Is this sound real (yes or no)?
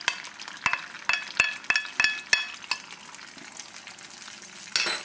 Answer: yes